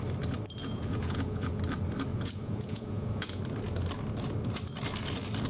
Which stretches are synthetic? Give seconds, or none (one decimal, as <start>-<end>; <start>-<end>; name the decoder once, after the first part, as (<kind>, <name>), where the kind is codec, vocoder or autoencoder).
0.6-1.6 (vocoder, Vocos); 2.1-3.4